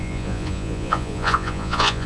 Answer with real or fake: fake